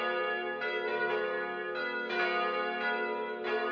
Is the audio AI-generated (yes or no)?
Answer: no